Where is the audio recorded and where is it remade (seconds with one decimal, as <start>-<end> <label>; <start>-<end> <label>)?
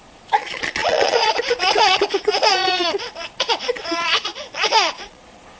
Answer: 0.0-5.6 remade